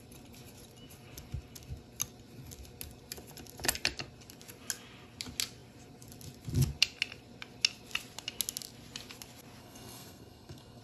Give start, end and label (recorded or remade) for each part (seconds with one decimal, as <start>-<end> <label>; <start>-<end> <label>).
0.0-9.6 recorded; 9.6-10.8 remade